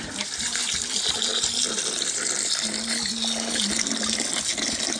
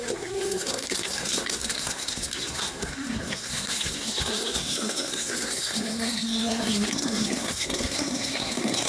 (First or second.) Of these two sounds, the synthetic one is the second